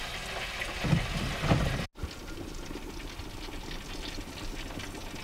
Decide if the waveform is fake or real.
real